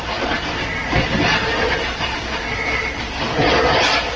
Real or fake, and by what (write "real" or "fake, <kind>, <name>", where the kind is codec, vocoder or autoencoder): fake, vocoder, BigVGAN v2